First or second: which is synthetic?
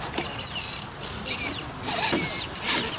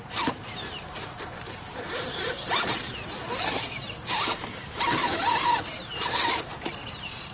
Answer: second